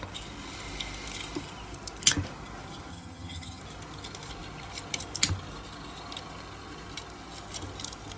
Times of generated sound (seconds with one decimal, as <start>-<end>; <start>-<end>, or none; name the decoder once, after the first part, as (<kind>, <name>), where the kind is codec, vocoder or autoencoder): 2.9-3.6 (vocoder, HiFi-GAN)